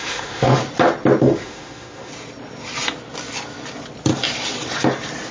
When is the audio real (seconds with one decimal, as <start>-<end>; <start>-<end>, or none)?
0.6-1.2; 2.1-5.3